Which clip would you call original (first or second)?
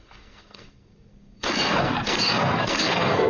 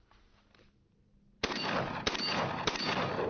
second